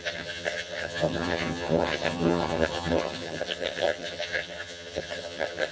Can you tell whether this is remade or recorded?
remade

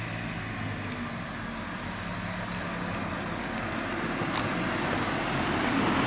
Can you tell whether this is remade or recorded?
recorded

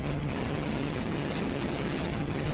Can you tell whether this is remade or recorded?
remade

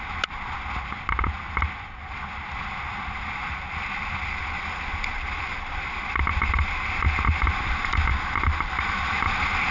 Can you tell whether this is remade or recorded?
recorded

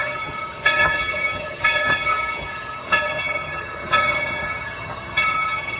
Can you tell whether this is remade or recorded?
remade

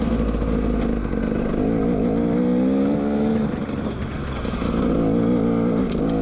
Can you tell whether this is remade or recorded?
recorded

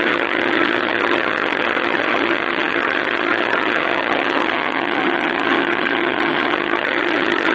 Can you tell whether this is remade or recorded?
remade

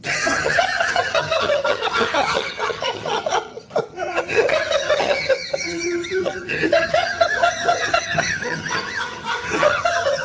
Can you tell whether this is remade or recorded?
remade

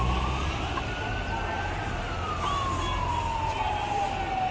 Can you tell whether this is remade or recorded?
recorded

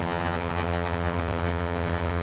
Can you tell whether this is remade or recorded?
remade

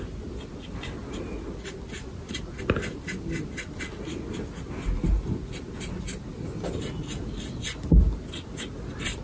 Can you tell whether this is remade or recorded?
recorded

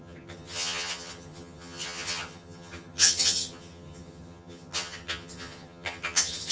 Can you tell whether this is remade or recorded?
remade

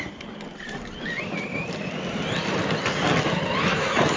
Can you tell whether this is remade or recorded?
recorded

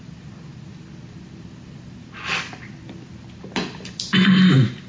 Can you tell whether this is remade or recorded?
recorded